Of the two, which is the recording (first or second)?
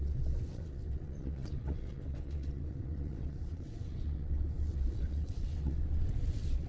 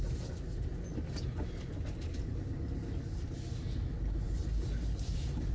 second